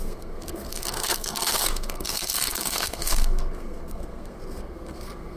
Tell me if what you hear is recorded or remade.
remade